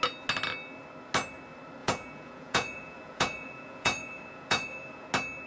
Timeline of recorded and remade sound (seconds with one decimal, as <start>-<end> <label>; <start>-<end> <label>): 0.0-1.8 recorded; 1.8-5.1 remade; 5.1-5.5 recorded